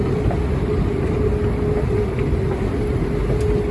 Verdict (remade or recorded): recorded